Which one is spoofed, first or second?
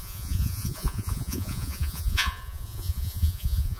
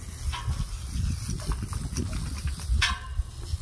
first